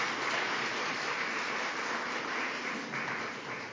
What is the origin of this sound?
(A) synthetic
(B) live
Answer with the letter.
B